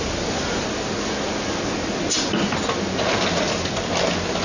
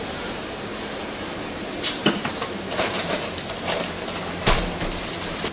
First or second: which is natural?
first